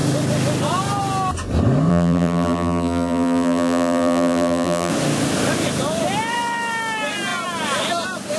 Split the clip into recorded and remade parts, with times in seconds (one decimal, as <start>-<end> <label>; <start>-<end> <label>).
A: 0.0-1.9 recorded; 1.9-4.9 remade; 4.9-8.4 recorded